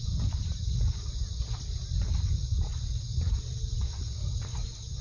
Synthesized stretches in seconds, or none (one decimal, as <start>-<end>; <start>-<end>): none